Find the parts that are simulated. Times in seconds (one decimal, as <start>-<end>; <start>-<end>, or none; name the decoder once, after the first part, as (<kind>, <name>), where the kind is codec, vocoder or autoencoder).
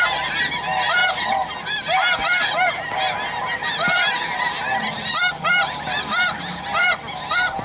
none